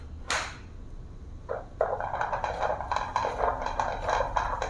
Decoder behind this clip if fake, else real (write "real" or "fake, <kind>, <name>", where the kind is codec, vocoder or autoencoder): real